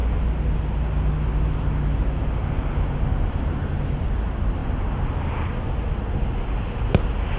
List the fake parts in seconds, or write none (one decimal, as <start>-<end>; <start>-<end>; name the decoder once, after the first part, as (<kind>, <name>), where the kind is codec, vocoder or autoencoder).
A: none